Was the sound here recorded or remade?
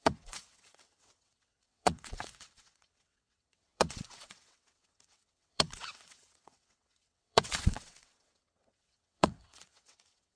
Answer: remade